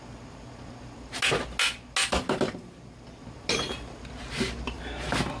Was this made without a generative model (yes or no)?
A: yes